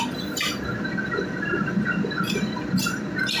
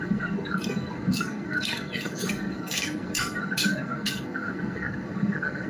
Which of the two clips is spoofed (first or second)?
second